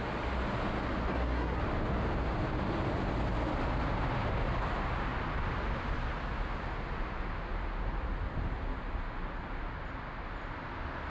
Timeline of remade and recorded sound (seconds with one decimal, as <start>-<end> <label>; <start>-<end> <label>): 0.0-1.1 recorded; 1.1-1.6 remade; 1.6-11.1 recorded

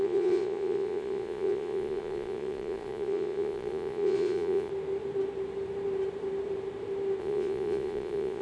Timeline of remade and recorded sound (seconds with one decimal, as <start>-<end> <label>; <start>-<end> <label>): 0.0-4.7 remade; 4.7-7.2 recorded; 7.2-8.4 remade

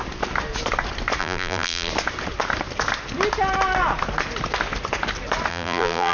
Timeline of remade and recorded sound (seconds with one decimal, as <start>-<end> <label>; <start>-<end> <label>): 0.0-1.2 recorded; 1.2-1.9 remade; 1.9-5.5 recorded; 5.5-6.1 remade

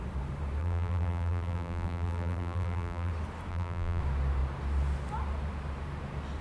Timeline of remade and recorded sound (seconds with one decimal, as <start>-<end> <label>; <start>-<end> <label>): 0.0-0.6 recorded; 0.6-3.1 remade; 3.1-3.5 recorded; 3.5-4.0 remade; 4.0-6.4 recorded

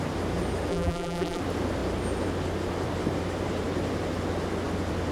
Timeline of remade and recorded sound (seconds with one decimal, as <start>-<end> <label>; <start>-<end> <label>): 0.0-0.7 recorded; 0.7-1.4 remade; 1.4-5.1 recorded

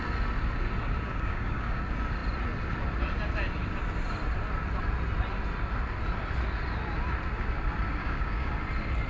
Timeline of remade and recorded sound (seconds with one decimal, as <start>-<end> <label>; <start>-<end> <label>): 0.0-1.1 recorded; 1.1-1.8 remade; 1.8-8.0 recorded; 8.0-8.5 remade; 8.5-9.1 recorded